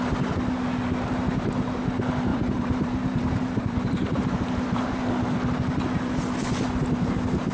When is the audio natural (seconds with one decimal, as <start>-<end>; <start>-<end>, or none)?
0.0-2.3; 5.0-7.5